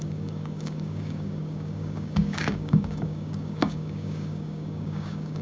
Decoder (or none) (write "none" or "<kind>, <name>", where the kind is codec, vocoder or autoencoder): codec, DAC